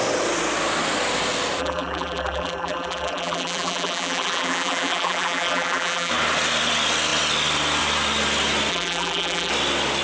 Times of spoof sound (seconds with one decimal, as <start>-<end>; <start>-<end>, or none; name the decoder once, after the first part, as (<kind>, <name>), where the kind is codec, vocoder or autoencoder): 1.6-6.1 (vocoder, BigVGAN v2); 8.7-9.5